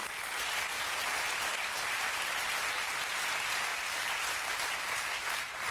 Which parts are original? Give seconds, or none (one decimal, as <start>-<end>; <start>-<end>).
0.0-3.7